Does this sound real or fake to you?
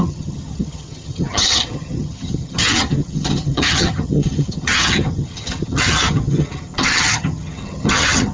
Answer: fake